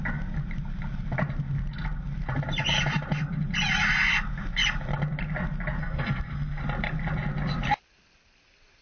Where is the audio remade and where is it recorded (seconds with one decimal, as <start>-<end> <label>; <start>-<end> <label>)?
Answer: 0.0-5.8 recorded; 5.8-6.6 remade; 6.6-8.8 recorded